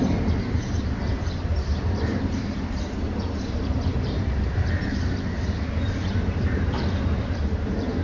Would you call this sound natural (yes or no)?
no